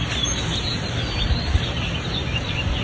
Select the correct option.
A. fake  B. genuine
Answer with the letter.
B